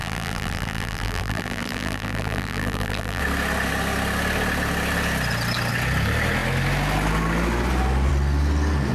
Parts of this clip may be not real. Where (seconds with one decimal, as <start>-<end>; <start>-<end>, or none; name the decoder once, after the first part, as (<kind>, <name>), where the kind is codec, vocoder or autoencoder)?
0.0-3.2 (vocoder, BigVGAN v2)